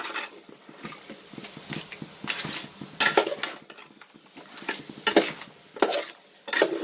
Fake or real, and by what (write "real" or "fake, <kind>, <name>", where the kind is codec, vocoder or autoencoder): real